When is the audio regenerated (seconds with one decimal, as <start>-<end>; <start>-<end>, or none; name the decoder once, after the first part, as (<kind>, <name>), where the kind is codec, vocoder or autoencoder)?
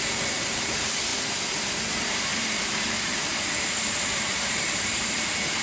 0.0-1.1 (vocoder, BigVGAN v2); 1.6-5.6